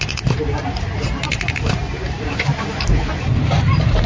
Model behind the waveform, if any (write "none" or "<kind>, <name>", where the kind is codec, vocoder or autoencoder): vocoder, BigVGAN v2